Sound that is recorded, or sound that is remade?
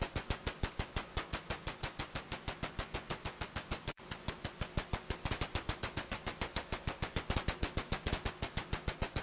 remade